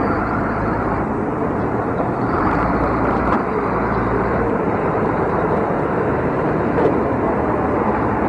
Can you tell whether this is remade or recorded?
remade